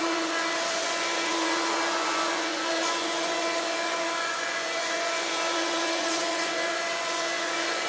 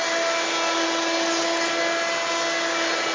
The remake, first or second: first